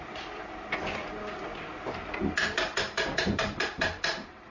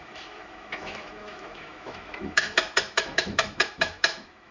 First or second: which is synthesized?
second